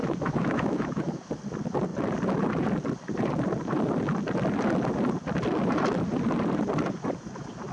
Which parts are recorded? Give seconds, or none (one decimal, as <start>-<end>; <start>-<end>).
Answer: 1.3-7.7